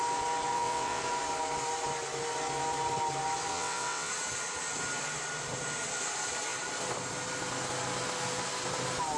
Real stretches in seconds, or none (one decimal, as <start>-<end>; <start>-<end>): 0.0-0.5; 1.0-3.5; 4.1-9.2